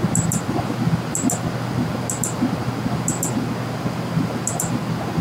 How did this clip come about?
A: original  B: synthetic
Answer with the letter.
A